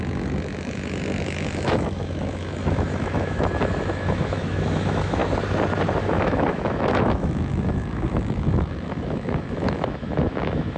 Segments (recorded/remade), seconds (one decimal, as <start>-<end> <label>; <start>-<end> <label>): 0.0-5.2 remade; 5.2-6.0 recorded; 6.0-10.8 remade